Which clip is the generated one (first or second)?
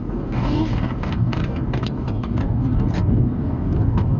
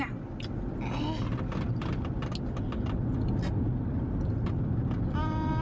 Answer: first